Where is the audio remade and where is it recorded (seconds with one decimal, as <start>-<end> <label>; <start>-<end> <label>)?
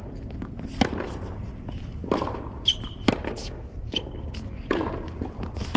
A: 0.0-3.4 recorded; 3.4-4.0 remade; 4.0-5.8 recorded